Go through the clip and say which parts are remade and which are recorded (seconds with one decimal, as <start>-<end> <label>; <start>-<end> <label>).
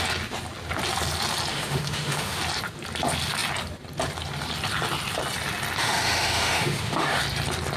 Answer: 0.0-1.5 recorded; 1.5-2.4 remade; 2.4-5.8 recorded; 5.8-7.2 remade; 7.2-7.8 recorded